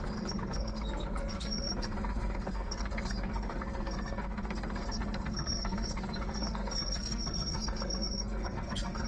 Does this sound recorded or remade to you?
remade